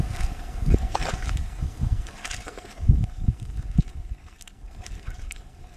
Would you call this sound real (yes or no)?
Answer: no